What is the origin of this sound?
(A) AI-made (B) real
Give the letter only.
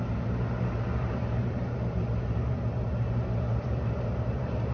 A